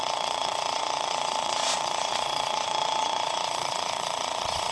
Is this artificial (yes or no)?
yes